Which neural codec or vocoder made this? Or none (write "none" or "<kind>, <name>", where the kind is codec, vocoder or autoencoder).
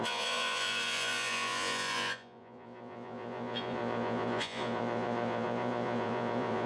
vocoder, Vocos